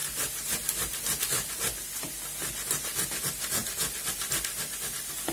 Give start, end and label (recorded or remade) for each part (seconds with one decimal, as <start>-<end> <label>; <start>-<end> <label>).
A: 0.0-5.3 recorded